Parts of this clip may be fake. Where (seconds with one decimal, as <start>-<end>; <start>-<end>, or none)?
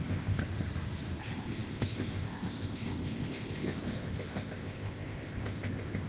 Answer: 0.0-0.4; 1.2-6.1